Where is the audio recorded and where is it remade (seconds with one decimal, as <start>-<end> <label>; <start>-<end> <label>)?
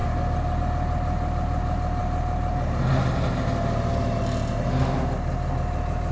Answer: 0.0-6.1 recorded